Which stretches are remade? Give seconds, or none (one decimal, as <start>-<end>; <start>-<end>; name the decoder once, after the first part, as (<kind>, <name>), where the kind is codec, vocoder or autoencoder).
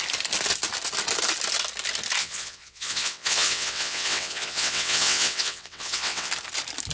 2.2-6.3 (vocoder, WaveNeXt)